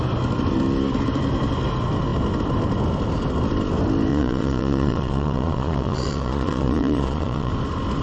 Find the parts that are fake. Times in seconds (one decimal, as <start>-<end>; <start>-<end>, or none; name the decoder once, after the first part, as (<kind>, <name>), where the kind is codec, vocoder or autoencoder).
4.1-7.5 (vocoder, Vocos)